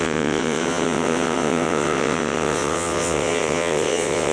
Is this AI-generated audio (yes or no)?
yes